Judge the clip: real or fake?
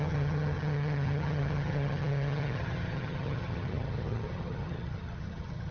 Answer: fake